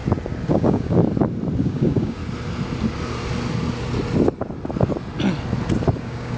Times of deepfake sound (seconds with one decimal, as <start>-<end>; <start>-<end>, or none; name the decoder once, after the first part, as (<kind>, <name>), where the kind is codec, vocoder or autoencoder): 0.5-1.0 (codec, DAC); 1.6-2.2; 6.0-6.4